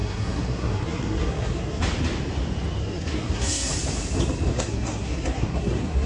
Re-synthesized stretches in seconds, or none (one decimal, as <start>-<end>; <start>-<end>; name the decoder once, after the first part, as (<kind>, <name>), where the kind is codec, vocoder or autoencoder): 0.0-1.8 (codec, SNAC); 2.8-3.7; 4.5-6.1